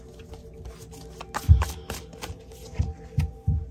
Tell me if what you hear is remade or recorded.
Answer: recorded